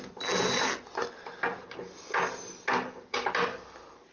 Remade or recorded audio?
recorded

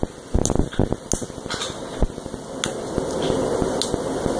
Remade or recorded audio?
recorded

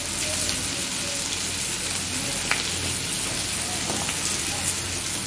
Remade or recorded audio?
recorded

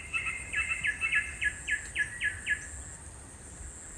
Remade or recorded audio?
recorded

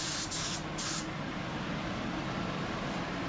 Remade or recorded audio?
remade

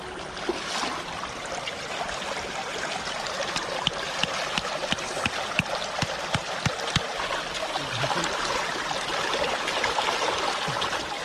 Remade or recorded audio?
recorded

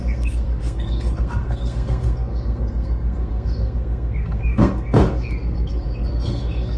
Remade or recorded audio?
remade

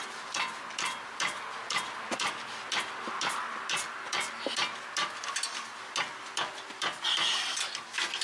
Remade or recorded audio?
recorded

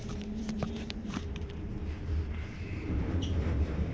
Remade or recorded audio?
remade